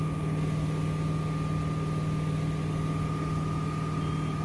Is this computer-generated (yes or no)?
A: no